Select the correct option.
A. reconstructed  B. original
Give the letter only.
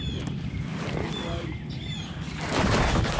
B